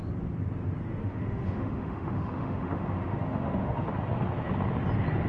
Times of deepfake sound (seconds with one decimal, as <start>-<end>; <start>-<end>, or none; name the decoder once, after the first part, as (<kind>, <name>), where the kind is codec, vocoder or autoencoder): 1.0-3.9 (autoencoder, DAC-VAE)